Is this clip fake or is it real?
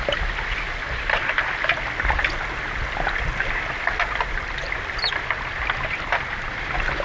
real